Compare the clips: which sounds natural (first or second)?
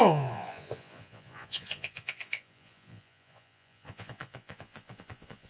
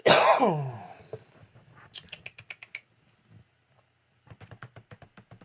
second